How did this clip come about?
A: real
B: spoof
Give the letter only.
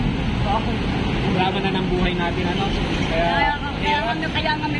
A